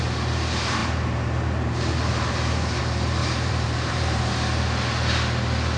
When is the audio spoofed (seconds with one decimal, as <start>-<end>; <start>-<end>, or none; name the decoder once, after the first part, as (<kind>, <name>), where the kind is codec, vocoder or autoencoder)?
3.2-4.2 (vocoder, BigVGAN v2)